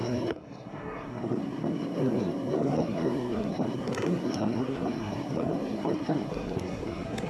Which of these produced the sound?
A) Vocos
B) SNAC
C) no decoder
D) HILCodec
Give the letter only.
B